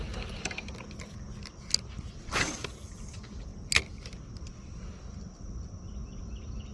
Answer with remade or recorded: recorded